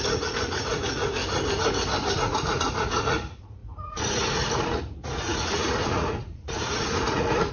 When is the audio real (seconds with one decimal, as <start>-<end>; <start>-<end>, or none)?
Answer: 1.2-2.2